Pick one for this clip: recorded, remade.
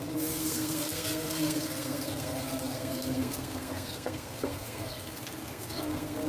remade